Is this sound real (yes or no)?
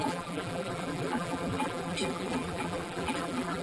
no